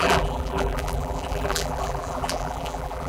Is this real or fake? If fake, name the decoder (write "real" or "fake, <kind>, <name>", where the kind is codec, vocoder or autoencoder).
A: fake, vocoder, BigVGAN v2